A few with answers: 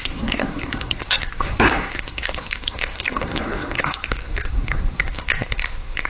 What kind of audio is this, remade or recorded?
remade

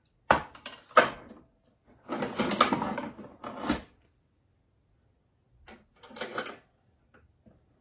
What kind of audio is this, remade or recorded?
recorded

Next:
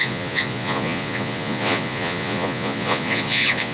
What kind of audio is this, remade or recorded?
remade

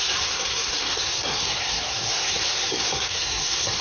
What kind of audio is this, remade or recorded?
remade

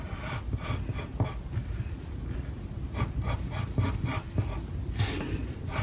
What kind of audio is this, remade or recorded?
recorded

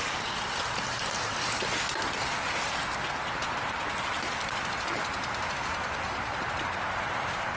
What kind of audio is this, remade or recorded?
recorded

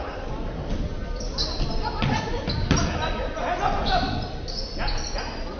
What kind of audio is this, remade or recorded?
recorded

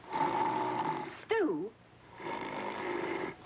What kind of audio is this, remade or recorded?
remade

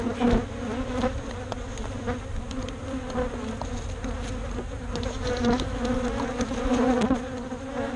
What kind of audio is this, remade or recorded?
recorded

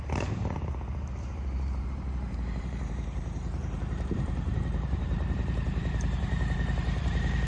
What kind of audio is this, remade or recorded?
remade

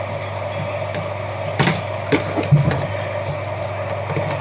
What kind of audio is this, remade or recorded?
recorded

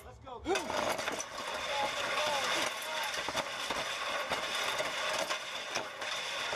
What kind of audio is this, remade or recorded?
recorded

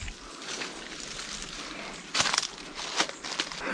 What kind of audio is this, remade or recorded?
recorded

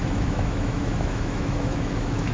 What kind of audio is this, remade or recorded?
remade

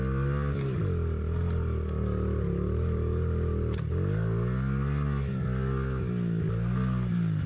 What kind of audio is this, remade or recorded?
recorded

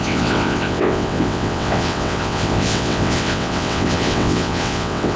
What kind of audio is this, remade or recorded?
remade